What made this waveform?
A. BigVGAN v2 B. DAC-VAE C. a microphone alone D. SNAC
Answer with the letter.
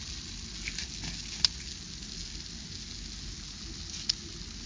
C